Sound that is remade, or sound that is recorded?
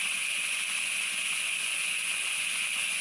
remade